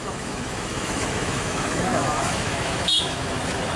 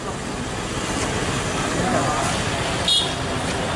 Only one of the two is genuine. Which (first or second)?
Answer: second